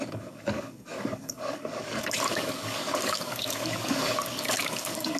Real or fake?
fake